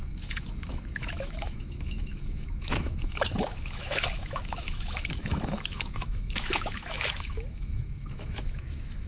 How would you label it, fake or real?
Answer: fake